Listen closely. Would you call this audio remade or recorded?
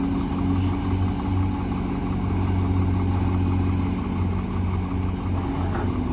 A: recorded